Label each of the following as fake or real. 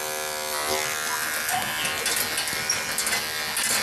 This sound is real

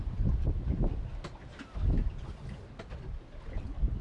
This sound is real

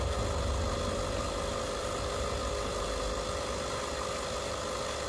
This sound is real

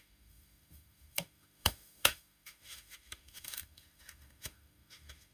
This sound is fake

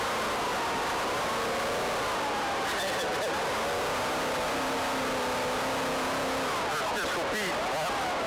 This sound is real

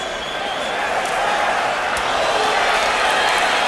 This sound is real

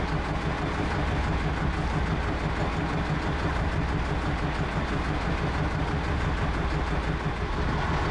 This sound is real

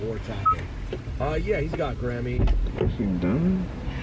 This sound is real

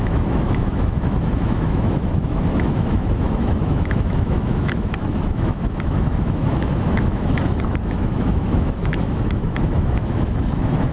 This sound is fake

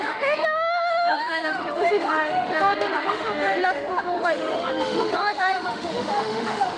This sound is fake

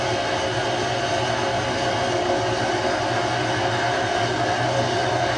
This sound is real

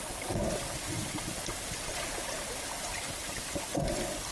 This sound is real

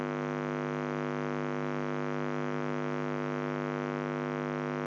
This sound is real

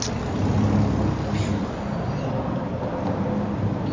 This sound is real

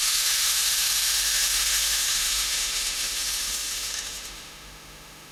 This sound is fake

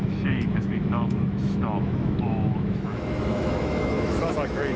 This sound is fake